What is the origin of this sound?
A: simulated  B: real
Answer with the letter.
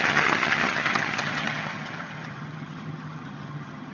A